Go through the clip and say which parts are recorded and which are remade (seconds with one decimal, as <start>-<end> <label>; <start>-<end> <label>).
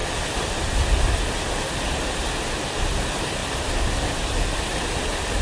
0.0-5.4 recorded